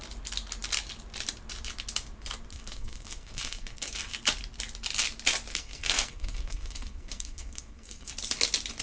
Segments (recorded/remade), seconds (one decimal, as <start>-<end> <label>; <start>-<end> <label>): 0.0-2.5 recorded; 2.5-4.2 remade; 4.2-5.5 recorded; 5.5-8.1 remade; 8.1-8.8 recorded